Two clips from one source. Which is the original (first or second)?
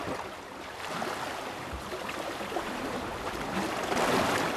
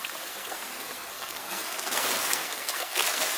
first